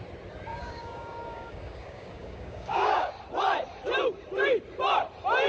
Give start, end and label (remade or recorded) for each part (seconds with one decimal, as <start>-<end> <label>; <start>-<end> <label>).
0.0-0.5 recorded; 0.5-3.1 remade; 3.1-5.5 recorded